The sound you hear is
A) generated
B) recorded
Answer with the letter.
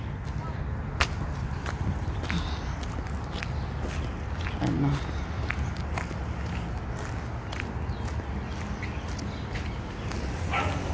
B